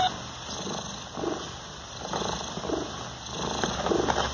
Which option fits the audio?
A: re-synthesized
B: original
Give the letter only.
B